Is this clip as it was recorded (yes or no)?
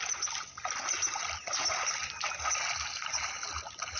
yes